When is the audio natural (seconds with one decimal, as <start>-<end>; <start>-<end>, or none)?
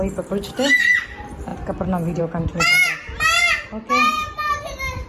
0.0-5.1